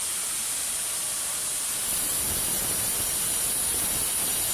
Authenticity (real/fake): real